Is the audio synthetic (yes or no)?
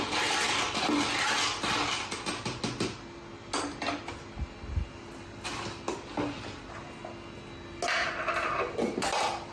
no